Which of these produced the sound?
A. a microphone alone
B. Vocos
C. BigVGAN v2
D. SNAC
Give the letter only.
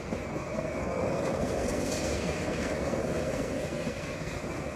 D